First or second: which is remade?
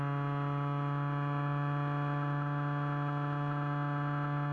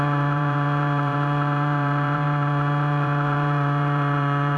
second